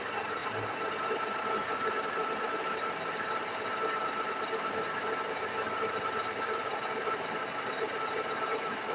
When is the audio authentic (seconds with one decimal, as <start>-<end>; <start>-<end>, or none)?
0.0-8.9